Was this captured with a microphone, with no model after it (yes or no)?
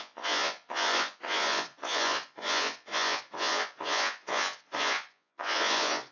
no